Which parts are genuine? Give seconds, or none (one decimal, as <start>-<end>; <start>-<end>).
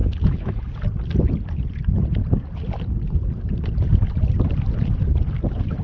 0.5-5.8